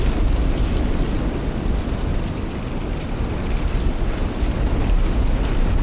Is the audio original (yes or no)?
yes